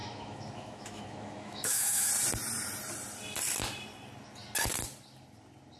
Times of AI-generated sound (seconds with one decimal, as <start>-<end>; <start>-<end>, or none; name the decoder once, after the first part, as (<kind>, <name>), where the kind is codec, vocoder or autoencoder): 0.0-2.1 (autoencoder, DAC-VAE)